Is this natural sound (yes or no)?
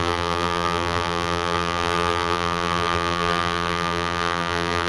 no